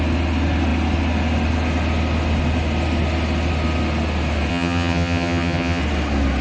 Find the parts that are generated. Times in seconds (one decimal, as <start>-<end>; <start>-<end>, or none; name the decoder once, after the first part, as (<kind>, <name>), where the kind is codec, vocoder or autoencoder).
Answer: 4.5-5.8 (vocoder, HiFi-GAN)